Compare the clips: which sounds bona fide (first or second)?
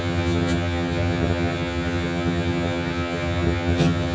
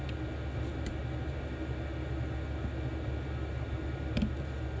second